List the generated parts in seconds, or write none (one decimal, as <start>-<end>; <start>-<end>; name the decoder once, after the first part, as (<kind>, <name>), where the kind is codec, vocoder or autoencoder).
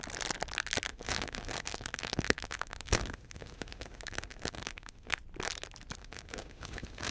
0.9-5.2 (autoencoder, DAC-VAE); 6.0-7.1